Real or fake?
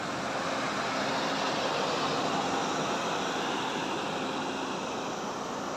real